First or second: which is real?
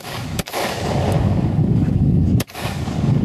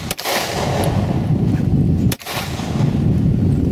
second